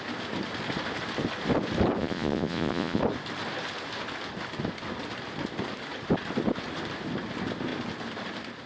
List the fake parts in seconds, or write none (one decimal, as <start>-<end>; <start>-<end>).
2.0-3.0